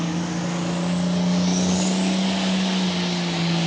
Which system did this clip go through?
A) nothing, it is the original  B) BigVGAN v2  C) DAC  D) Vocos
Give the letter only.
C